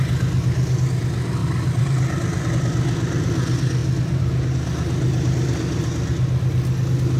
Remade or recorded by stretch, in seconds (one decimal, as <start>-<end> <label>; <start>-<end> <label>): 0.0-1.4 recorded; 1.4-2.5 remade; 2.5-7.2 recorded